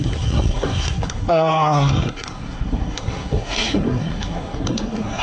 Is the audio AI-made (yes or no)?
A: yes